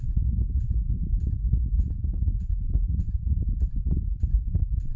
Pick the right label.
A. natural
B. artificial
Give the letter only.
B